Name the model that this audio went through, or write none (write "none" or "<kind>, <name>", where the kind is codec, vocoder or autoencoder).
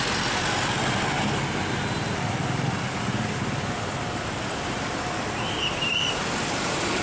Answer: none